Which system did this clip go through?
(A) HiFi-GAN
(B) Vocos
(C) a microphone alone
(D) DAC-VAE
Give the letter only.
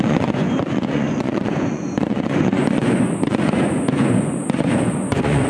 B